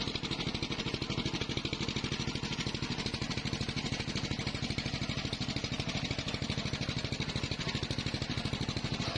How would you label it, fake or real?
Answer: real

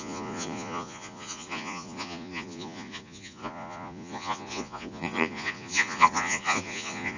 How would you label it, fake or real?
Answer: fake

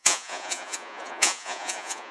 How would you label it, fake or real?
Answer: fake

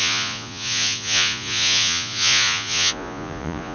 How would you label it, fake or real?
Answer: fake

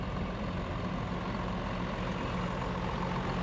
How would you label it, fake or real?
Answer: real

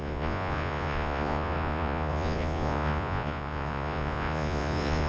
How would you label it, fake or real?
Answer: fake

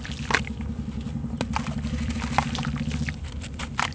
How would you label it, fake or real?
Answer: real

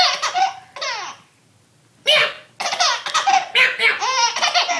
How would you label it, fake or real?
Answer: real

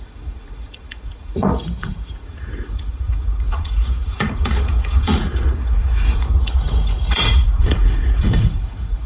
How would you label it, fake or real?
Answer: fake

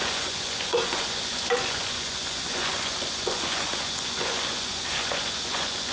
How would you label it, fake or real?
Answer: fake